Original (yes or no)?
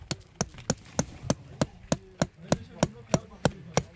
yes